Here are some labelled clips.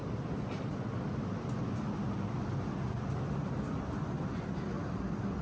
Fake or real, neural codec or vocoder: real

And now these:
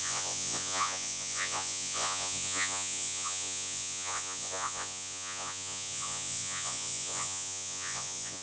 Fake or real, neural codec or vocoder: fake, vocoder, Vocos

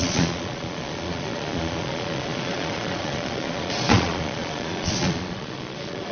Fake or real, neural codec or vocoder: fake, vocoder, Vocos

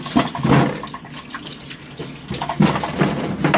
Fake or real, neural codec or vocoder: real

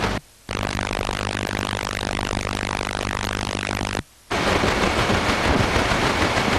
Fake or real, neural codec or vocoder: real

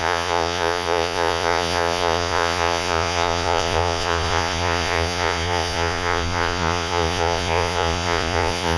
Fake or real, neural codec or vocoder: fake, vocoder, Vocos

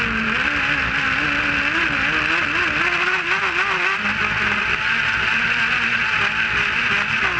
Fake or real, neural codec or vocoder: real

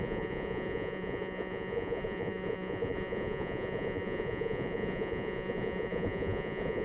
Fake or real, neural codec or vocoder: fake, vocoder, Vocos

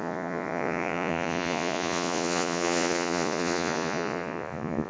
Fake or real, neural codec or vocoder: fake, vocoder, Vocos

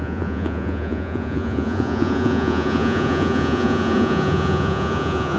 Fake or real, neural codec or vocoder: fake, vocoder, Vocos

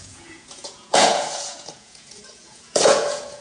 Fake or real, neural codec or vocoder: fake, vocoder, Vocos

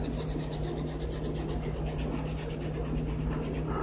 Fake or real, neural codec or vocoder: real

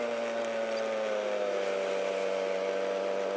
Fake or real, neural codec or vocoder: real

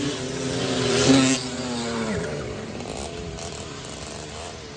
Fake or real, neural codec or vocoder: real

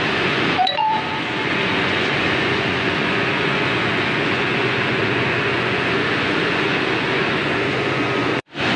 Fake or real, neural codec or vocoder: fake, vocoder, Vocos